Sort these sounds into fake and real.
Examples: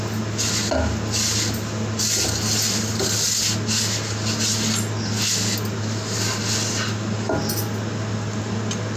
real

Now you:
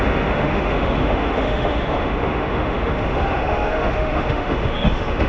fake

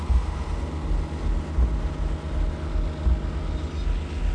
real